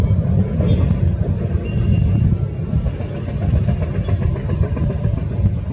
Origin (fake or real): real